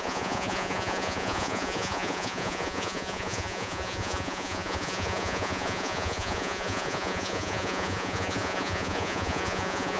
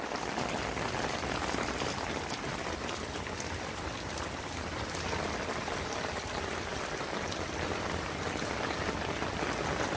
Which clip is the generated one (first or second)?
first